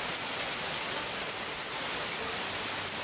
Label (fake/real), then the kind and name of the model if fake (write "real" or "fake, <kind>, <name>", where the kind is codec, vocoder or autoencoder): real